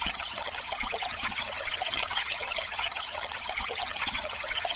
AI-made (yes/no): yes